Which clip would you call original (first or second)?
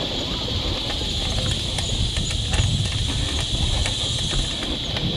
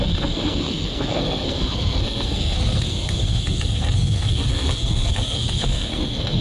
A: first